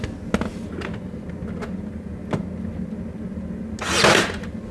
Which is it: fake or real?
real